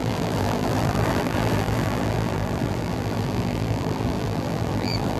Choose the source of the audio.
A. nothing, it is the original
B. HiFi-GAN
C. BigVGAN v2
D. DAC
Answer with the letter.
C